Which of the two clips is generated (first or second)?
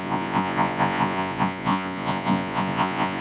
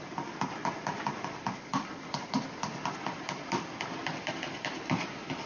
first